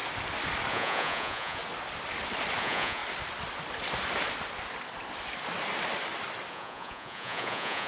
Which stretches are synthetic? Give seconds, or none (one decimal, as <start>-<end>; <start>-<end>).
0.7-1.6; 2.6-3.0; 6.5-7.9